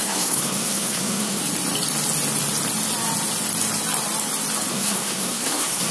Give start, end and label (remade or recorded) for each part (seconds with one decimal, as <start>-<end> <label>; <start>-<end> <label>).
0.0-1.4 remade; 1.4-4.7 recorded; 4.7-5.9 remade